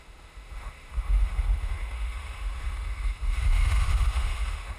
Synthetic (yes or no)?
yes